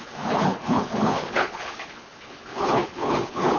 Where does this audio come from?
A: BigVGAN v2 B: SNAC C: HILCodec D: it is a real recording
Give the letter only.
C